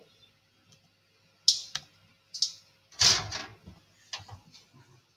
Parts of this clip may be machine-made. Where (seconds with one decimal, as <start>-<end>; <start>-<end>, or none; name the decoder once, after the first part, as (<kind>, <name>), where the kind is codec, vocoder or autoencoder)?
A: none

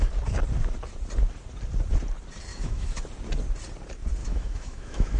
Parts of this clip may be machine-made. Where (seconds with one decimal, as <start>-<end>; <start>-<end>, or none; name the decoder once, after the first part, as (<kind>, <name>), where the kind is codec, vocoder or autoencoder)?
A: 2.5-3.0 (autoencoder, DAC-VAE); 4.2-5.2

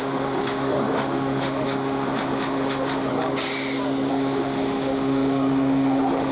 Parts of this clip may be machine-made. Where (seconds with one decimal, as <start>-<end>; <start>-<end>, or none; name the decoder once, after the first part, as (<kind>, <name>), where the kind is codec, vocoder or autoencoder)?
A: 0.0-3.1 (autoencoder, DAC-VAE); 4.1-6.3

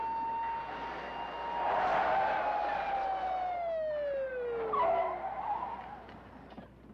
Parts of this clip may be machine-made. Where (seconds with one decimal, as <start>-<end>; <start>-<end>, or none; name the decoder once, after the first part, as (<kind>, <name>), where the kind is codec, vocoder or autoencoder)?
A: none